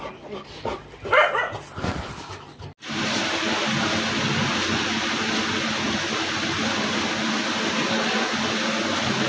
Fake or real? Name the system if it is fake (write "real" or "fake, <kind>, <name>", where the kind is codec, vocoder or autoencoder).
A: real